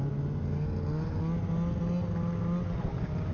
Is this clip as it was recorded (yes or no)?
yes